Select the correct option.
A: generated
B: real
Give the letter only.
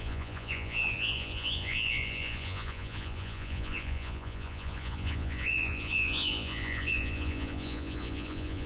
A